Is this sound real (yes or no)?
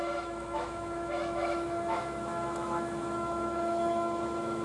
no